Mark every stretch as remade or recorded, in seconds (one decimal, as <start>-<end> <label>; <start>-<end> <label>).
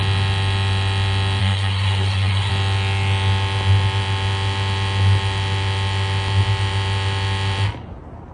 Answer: 0.0-1.4 recorded; 1.4-2.5 remade; 2.5-8.3 recorded